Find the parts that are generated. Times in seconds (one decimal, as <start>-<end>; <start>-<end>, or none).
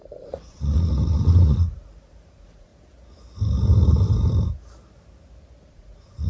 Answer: 0.0-2.7; 5.7-6.3